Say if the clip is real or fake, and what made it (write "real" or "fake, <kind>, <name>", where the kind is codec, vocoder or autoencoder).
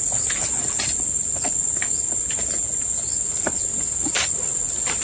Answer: real